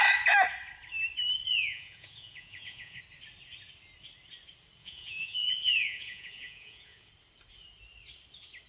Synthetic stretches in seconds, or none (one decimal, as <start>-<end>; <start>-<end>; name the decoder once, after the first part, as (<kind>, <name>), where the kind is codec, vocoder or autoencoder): 1.5-3.0 (vocoder, Vocos); 4.8-7.1

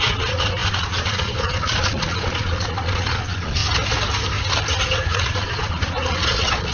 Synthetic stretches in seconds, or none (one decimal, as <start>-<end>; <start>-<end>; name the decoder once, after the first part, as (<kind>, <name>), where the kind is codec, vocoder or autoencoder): 0.0-3.6 (vocoder, Vocos); 5.1-6.7